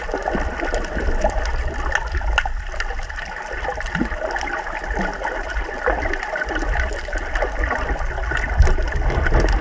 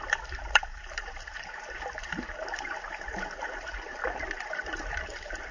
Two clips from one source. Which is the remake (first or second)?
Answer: second